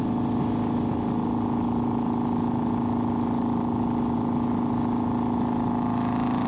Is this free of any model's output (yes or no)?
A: yes